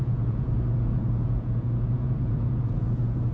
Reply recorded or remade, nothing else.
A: remade